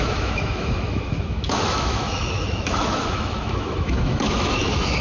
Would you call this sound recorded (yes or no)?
no